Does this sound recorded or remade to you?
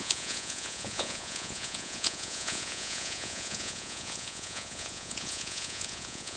remade